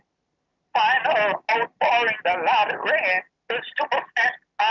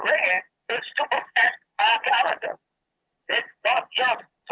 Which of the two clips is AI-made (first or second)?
second